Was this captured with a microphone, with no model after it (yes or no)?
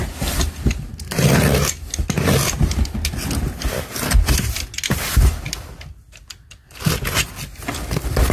yes